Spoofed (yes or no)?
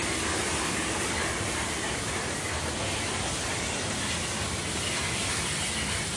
no